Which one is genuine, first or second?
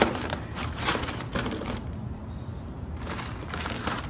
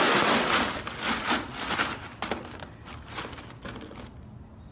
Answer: second